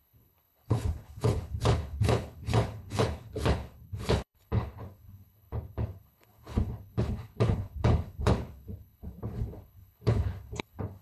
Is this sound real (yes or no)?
no